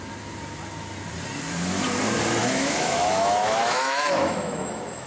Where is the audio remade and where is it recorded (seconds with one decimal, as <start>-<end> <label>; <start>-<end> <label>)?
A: 0.0-2.4 recorded; 2.4-5.1 remade